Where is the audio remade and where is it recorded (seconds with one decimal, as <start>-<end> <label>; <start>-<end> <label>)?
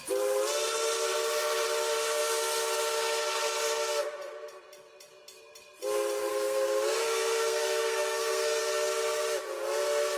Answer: 0.0-6.3 recorded; 6.3-8.6 remade; 8.6-10.2 recorded